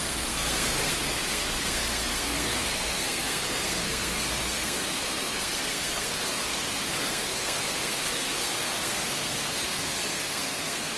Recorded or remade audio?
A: remade